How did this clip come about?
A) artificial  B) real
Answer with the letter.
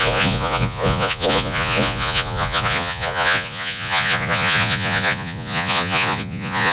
A